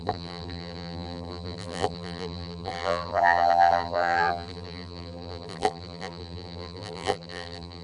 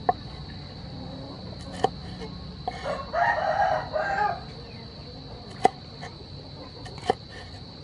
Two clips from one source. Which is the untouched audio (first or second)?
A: second